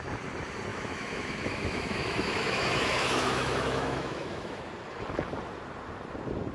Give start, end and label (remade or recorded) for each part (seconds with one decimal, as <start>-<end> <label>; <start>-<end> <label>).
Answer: 0.0-0.7 recorded; 0.7-4.6 remade; 4.6-6.5 recorded